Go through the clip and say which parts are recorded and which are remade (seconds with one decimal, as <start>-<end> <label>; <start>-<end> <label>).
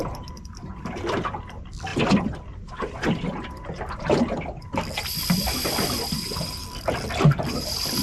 0.0-0.7 remade; 0.7-1.4 recorded; 1.4-1.9 remade; 1.9-5.2 recorded; 5.2-8.0 remade